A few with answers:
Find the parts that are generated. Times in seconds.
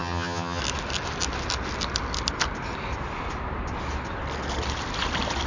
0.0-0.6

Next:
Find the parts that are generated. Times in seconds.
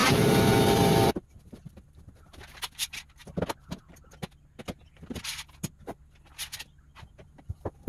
0.0-1.7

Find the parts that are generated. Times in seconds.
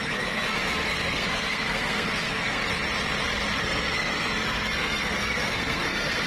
0.0-2.6; 3.6-6.3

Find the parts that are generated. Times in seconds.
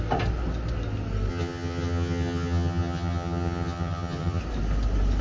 1.3-4.4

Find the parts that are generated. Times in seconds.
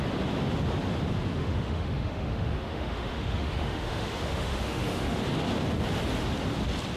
1.4-5.2